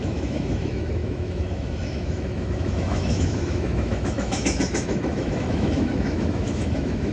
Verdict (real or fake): fake